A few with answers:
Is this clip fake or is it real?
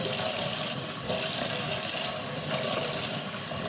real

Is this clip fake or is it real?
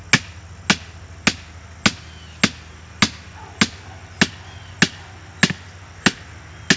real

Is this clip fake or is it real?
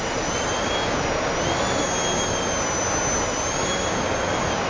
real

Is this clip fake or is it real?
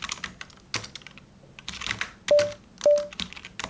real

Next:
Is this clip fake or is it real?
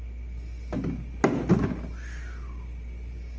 real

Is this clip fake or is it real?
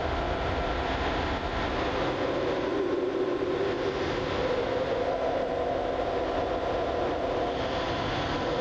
real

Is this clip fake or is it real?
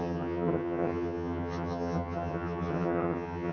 fake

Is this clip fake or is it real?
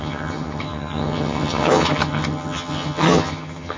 fake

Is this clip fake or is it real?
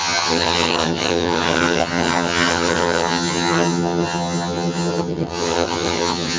fake